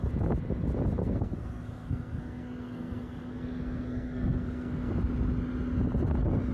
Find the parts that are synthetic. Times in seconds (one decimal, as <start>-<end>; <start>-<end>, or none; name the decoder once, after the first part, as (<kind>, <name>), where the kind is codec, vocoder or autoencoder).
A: 1.0-4.9 (codec, SNAC)